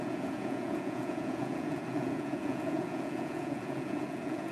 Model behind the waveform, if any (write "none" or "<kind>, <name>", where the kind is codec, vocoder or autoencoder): vocoder, Vocos